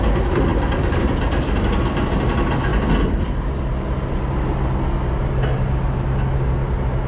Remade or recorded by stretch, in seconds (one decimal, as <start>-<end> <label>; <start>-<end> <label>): 0.0-7.1 recorded